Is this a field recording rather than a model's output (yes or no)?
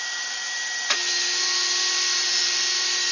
yes